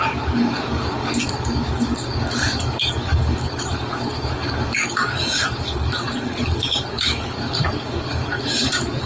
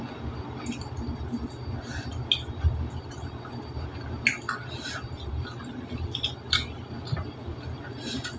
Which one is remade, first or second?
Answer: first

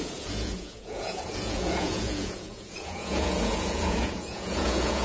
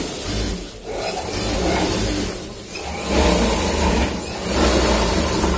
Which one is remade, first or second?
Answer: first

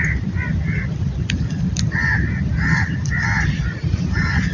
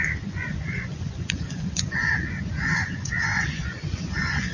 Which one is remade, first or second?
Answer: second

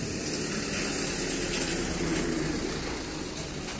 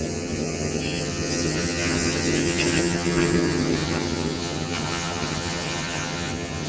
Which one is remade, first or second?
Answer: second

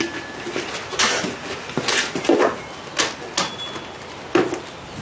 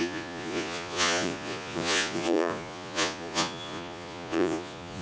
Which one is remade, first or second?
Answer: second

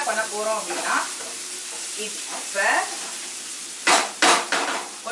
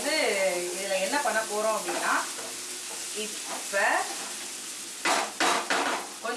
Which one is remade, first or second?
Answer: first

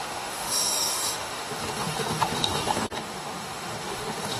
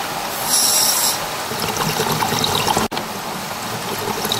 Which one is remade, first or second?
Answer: first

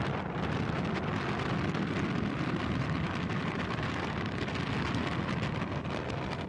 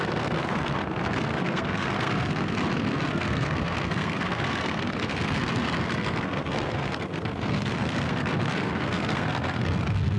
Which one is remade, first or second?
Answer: second